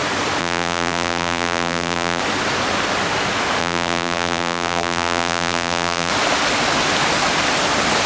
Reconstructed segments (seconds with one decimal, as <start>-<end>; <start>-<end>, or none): 0.4-2.2; 3.6-6.1